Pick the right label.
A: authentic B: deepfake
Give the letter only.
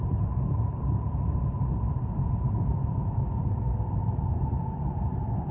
B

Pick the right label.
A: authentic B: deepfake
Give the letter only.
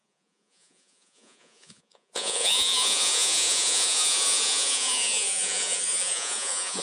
B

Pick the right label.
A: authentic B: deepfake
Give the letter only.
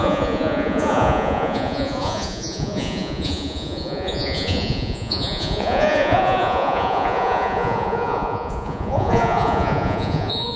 B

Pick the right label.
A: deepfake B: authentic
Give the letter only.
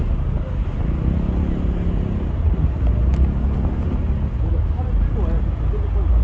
B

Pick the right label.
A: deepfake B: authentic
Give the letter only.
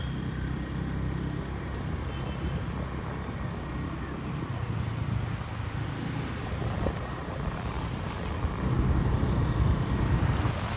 B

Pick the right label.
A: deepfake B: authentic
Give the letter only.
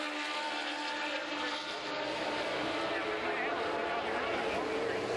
B